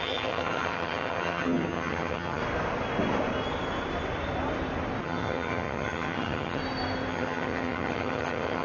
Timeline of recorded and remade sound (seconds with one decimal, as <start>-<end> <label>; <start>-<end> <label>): 0.0-2.4 remade; 2.4-5.0 recorded; 5.0-6.6 remade; 6.6-7.1 recorded; 7.1-8.6 remade